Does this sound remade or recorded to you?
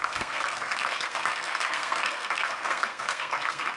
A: remade